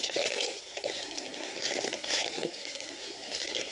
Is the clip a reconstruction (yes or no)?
yes